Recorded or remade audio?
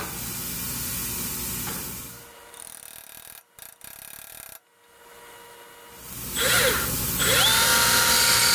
recorded